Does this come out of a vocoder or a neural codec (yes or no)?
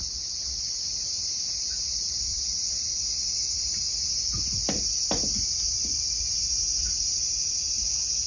no